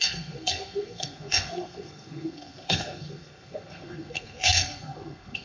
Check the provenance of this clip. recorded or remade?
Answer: remade